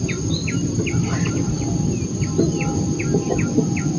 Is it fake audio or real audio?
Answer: real